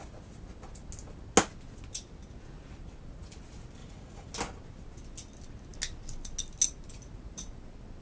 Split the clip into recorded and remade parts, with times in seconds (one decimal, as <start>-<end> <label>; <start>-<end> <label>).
0.0-3.8 recorded; 3.8-4.3 remade; 4.3-8.0 recorded